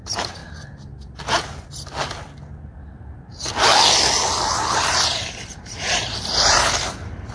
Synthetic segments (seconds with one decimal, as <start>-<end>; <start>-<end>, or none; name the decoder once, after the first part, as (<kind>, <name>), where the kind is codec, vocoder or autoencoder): 0.0-0.4 (vocoder, BigVGAN v2); 4.5-7.3